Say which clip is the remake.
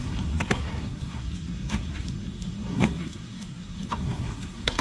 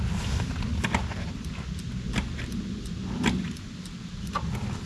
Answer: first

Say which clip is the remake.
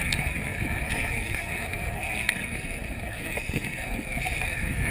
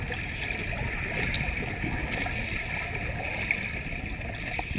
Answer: first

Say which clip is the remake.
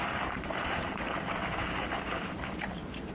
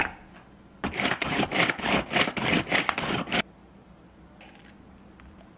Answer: first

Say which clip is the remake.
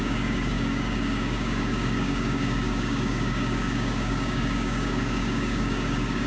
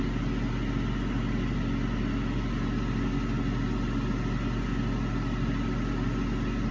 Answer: first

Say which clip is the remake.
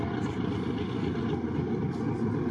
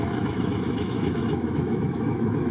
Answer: second